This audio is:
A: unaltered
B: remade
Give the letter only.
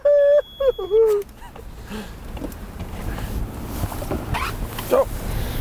A